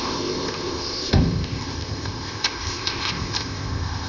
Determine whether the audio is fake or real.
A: fake